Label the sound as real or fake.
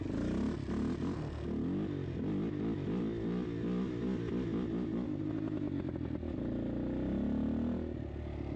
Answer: real